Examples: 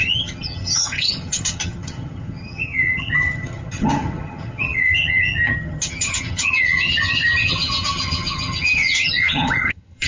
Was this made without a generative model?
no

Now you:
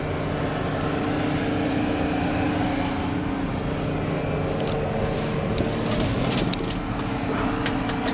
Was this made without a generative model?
yes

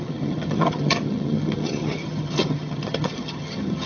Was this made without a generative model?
no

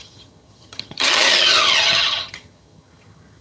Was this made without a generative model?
no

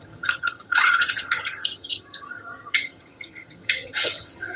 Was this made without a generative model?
no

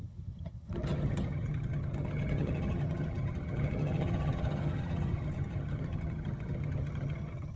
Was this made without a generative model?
no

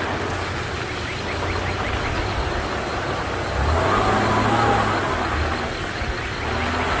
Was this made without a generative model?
yes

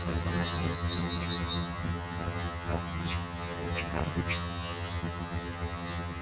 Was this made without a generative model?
no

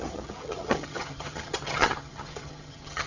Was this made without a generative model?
no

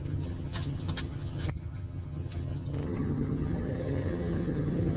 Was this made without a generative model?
no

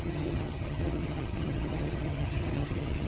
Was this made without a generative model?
no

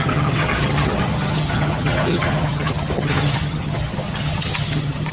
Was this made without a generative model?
no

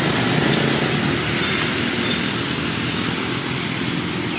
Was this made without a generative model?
yes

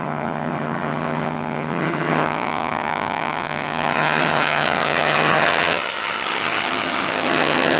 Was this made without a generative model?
no